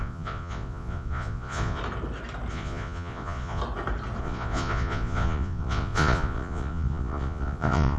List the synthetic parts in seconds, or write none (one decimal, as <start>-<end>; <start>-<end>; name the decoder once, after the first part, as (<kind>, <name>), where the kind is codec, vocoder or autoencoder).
0.0-1.8 (vocoder, Vocos); 2.5-3.6; 4.2-8.0